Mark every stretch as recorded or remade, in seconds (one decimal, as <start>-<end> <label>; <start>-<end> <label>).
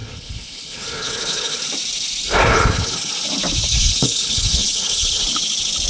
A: 0.0-1.6 remade; 1.6-2.5 recorded; 2.5-3.1 remade; 3.1-3.7 recorded; 3.7-5.1 remade; 5.1-5.9 recorded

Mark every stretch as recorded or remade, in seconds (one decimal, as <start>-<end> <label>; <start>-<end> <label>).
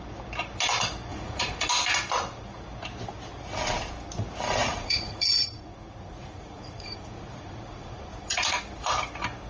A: 0.0-1.1 recorded; 1.1-1.7 remade; 1.7-4.6 recorded; 4.6-8.6 remade; 8.6-9.5 recorded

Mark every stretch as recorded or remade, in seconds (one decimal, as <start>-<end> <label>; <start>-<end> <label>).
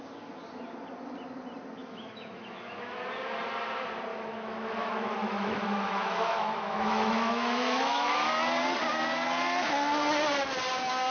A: 0.0-1.8 recorded; 1.8-3.0 remade; 3.0-4.1 recorded; 4.1-8.3 remade; 8.3-11.1 recorded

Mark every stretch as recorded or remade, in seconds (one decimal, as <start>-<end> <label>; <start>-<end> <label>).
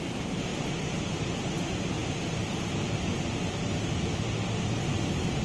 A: 0.0-5.4 recorded